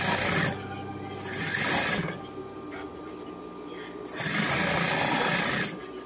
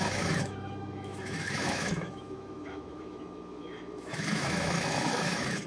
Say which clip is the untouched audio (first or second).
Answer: first